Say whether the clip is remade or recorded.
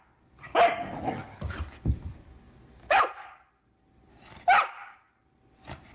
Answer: recorded